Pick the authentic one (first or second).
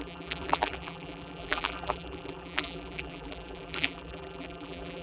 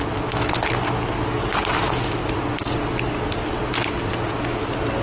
second